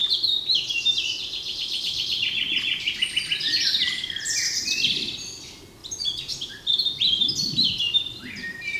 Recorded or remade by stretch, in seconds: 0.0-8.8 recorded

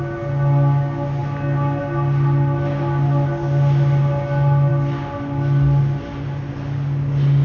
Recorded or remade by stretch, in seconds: 0.0-7.4 recorded

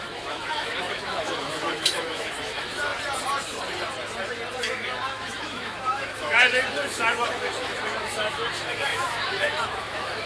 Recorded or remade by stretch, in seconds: 0.0-2.9 remade; 2.9-4.6 recorded; 4.6-10.3 remade

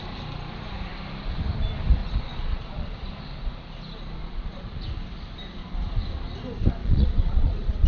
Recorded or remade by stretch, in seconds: 0.0-2.0 recorded; 2.0-3.1 remade; 3.1-4.2 recorded; 4.2-4.8 remade; 4.8-6.8 recorded; 6.8-7.9 remade